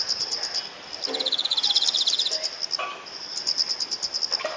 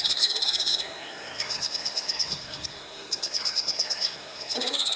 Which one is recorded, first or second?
first